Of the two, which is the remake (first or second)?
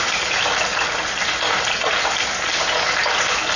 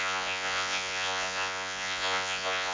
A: second